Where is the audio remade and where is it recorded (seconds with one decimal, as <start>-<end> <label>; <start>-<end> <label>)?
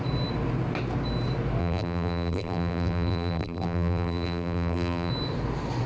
0.0-1.6 recorded; 1.6-5.1 remade; 5.1-5.9 recorded